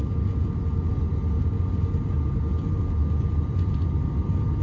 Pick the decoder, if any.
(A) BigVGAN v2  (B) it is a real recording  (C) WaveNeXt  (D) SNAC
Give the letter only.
B